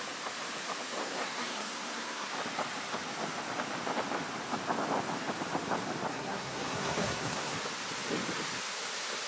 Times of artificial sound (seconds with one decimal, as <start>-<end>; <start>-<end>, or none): 1.0-2.3; 6.1-7.6